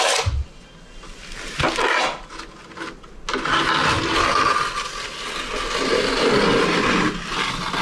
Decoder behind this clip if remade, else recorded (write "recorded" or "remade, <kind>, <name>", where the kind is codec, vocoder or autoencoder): recorded